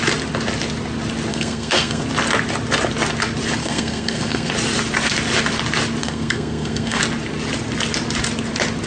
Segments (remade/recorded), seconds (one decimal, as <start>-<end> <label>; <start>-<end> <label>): 0.0-1.3 recorded; 1.3-2.0 remade; 2.0-3.6 recorded; 3.6-4.5 remade; 4.5-6.0 recorded; 6.0-7.0 remade; 7.0-8.9 recorded